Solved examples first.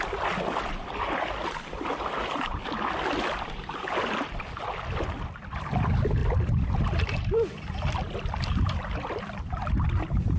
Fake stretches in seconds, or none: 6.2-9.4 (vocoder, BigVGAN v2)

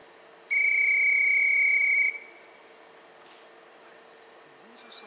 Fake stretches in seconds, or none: none

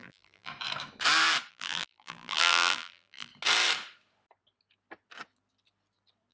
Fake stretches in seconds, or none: 0.0-0.5 (vocoder, BigVGAN v2); 1.5-3.3

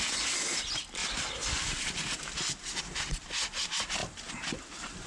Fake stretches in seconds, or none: 1.0-3.1 (vocoder, BigVGAN v2); 4.0-4.6

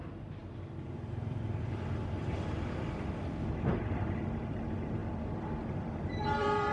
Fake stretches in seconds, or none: 0.0-3.3 (vocoder, BigVGAN v2); 4.2-5.0; 5.6-6.7